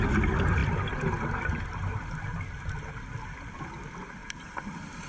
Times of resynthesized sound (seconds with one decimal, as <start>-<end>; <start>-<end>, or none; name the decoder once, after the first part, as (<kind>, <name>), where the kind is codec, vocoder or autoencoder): 4.2-5.1 (vocoder, BigVGAN v2)